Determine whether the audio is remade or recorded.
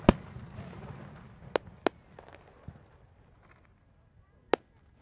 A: recorded